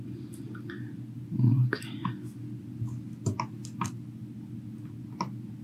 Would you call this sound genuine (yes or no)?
yes